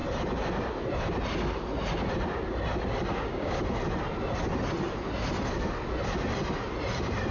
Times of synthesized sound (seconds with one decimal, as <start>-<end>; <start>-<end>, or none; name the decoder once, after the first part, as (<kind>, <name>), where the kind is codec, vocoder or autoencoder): 3.1-3.6 (codec, DAC)